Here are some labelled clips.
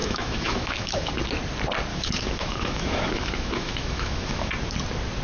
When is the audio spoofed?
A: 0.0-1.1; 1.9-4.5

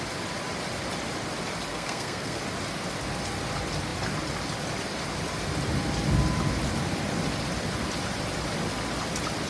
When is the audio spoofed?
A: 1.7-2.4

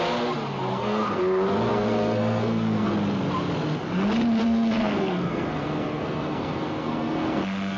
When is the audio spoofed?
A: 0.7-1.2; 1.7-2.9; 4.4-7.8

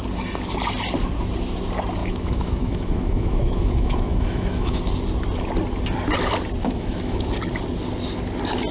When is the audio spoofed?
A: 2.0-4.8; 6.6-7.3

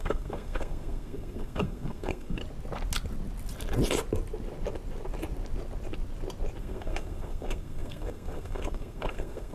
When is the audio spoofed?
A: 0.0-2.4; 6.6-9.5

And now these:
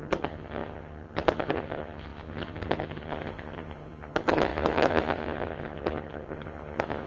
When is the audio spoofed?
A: 0.0-7.1